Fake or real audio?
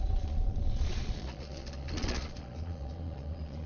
fake